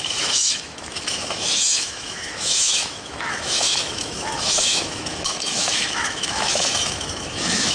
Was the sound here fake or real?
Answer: fake